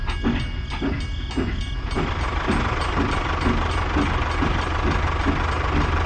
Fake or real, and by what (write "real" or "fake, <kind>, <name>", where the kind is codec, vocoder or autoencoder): real